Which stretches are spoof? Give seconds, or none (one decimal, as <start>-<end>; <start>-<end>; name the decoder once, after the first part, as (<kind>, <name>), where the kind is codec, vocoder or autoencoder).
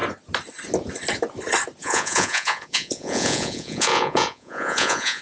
1.8-5.2 (vocoder, Vocos)